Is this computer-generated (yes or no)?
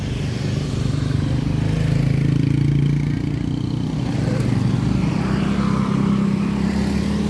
no